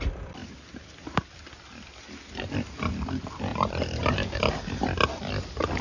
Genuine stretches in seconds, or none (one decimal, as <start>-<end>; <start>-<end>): 0.0-3.5; 4.5-5.8